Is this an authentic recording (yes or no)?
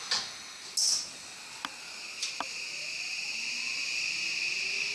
yes